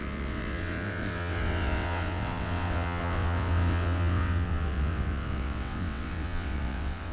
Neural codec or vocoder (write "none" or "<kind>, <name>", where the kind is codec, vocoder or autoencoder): vocoder, WaveNeXt